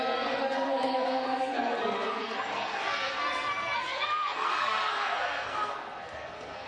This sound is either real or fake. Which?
fake